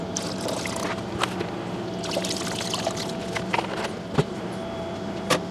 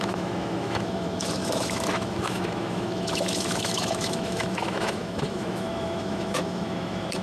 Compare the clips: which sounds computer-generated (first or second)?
second